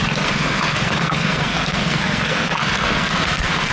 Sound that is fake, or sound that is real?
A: fake